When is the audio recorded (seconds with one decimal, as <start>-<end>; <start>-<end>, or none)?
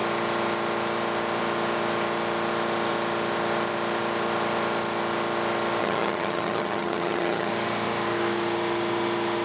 0.0-5.8; 7.5-9.4